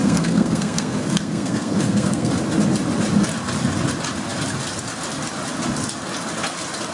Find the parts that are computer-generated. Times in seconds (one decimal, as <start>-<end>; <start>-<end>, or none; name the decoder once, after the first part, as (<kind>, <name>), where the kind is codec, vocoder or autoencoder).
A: 0.0-2.3 (codec, SNAC)